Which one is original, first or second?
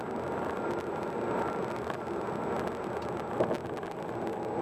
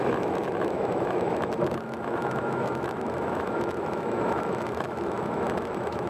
first